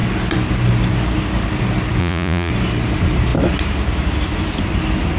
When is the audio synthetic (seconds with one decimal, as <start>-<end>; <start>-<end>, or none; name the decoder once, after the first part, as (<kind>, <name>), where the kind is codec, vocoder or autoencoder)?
2.0-2.5 (vocoder, Vocos)